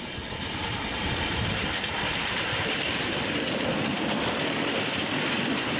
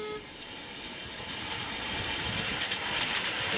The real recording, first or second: second